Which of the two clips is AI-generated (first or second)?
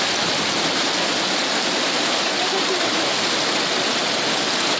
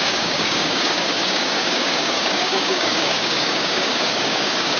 second